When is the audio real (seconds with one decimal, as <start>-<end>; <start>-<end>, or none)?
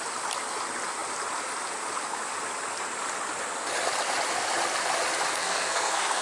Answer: 0.0-5.3